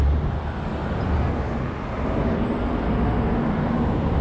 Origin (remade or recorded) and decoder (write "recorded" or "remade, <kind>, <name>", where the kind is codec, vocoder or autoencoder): recorded